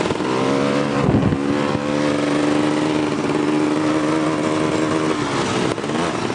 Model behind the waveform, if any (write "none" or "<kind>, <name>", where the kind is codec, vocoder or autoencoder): none